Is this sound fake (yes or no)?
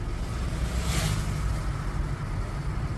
no